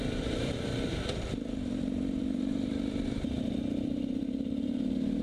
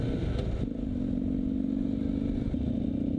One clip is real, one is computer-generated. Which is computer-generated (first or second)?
first